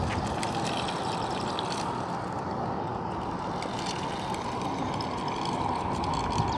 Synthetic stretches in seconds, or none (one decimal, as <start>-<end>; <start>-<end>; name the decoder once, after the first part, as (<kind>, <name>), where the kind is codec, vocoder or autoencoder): none